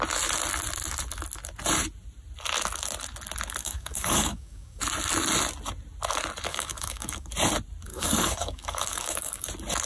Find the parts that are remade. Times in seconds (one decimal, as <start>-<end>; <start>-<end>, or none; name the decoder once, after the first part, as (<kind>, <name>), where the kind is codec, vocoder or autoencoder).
3.6-4.8 (codec, DAC); 6.5-7.3; 7.9-9.5